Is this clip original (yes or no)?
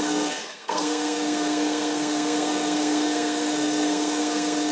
no